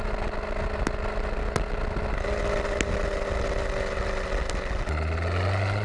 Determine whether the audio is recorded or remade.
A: recorded